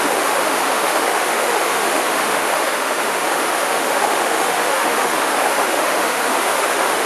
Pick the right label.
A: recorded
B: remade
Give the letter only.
B